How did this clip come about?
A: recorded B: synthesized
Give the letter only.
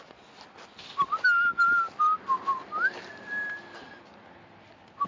A